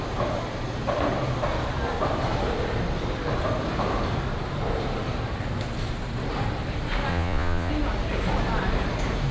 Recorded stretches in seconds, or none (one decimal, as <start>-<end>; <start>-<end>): 0.0-7.1; 7.7-9.3